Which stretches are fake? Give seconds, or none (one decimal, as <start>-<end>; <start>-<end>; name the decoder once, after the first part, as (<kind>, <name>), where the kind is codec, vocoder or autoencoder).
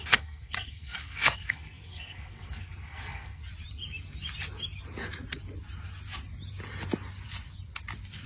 0.0-3.4 (codec, SNAC)